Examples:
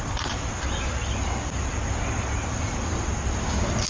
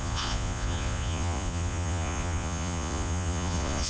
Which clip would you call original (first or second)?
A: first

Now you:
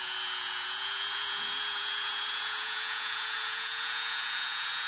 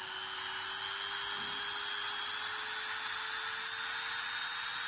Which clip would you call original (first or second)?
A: second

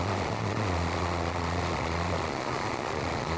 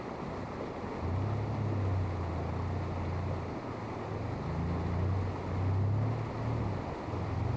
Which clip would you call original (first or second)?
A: second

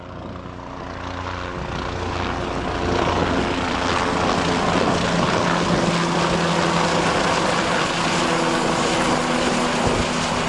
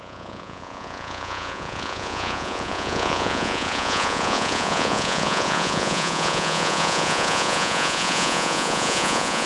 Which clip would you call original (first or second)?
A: first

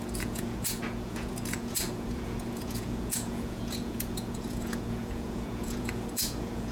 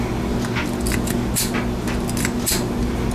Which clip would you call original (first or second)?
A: second